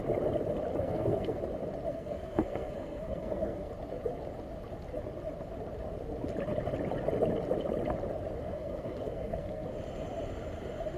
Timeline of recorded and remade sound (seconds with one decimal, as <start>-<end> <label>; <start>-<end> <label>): 0.0-0.8 recorded; 0.8-1.4 remade; 1.4-1.9 recorded; 1.9-3.7 remade; 3.7-8.4 recorded; 8.4-9.7 remade; 9.7-11.0 recorded

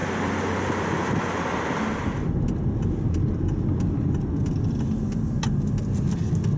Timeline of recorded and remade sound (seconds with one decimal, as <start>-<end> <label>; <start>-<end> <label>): 0.0-6.6 recorded